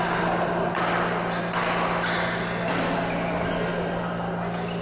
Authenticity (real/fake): real